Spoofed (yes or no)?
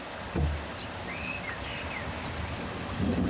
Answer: no